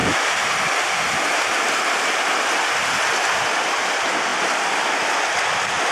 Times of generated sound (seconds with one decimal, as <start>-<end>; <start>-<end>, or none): none